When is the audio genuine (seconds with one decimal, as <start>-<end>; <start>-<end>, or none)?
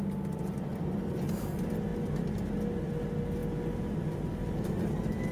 0.0-5.3